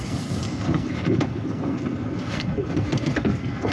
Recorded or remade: remade